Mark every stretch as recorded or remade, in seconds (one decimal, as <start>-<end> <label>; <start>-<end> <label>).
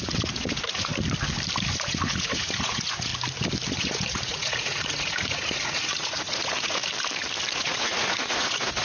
0.0-0.9 remade; 0.9-1.7 recorded; 1.7-3.1 remade; 3.1-3.7 recorded; 3.7-6.8 remade; 6.8-7.5 recorded; 7.5-8.8 remade